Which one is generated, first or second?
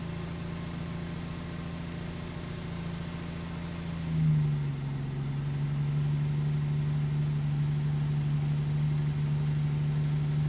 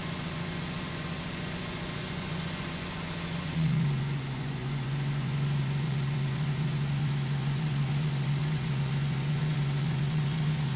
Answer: second